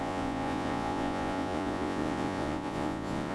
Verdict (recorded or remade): remade